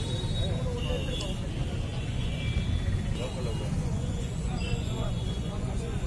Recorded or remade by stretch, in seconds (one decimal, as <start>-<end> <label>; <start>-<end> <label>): 0.0-1.9 recorded; 1.9-2.4 remade; 2.4-3.8 recorded; 3.8-6.1 remade